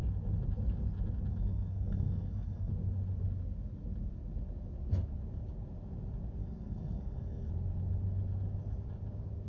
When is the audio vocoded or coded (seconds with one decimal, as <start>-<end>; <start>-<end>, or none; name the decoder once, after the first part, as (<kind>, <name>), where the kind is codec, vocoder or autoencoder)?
1.3-2.7 (codec, SNAC); 6.4-7.5